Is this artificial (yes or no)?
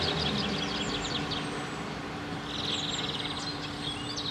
no